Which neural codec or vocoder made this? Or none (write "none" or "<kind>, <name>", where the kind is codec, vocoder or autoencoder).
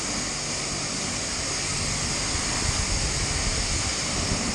none